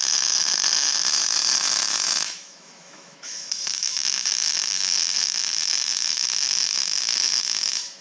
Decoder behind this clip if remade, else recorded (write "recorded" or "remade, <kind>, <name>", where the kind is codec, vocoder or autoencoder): remade, autoencoder, DAC-VAE